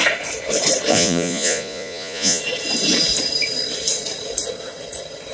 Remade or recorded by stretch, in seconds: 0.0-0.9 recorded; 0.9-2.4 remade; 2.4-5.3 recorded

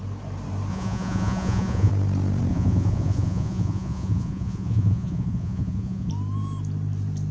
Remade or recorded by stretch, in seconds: 0.0-0.7 recorded; 0.7-1.9 remade; 1.9-2.5 recorded; 2.5-6.1 remade; 6.1-7.3 recorded

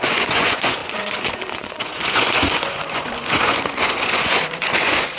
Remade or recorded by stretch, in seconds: 0.0-5.2 remade

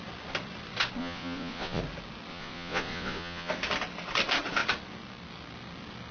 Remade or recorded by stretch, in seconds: 0.0-1.0 recorded; 1.0-1.8 remade; 1.8-2.3 recorded; 2.3-3.5 remade; 3.5-6.1 recorded

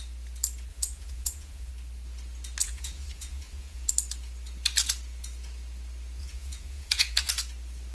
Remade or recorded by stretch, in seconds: 0.0-0.7 recorded; 0.7-1.7 remade; 1.7-2.6 recorded; 2.6-3.9 remade; 3.9-6.2 recorded; 6.2-7.3 remade; 7.3-7.9 recorded

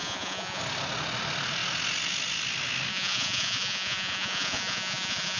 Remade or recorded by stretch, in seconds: 0.0-0.6 remade; 0.6-2.9 recorded; 2.9-5.4 remade